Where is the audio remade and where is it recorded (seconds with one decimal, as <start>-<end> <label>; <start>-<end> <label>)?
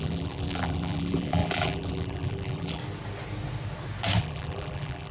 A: 0.0-2.8 remade; 2.8-4.2 recorded; 4.2-5.1 remade